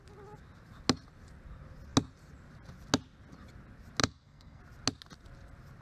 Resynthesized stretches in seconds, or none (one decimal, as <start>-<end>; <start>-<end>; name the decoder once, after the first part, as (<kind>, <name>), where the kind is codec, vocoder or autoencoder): 4.0-4.6 (codec, SNAC)